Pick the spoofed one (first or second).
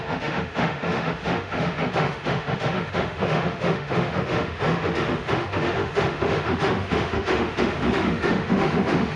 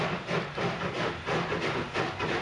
first